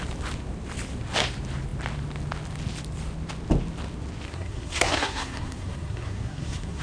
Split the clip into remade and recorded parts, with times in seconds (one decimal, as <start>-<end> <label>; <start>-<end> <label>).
0.0-4.3 recorded; 4.3-6.8 remade